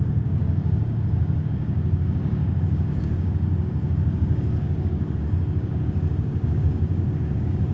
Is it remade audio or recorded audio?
remade